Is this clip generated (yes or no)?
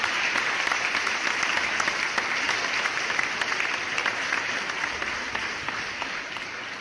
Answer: no